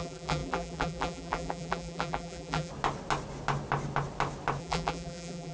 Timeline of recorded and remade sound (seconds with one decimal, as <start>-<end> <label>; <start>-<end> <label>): 0.0-2.7 remade; 2.7-4.6 recorded; 4.6-5.5 remade